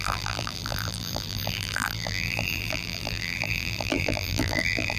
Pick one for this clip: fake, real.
fake